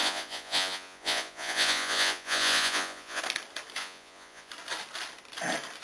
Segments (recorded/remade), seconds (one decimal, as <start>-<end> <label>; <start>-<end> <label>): 0.0-3.2 remade; 3.2-3.8 recorded; 3.8-4.5 remade; 4.5-5.8 recorded